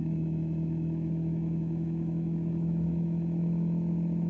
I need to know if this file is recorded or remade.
remade